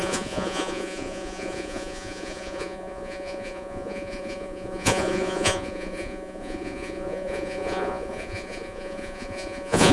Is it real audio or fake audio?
fake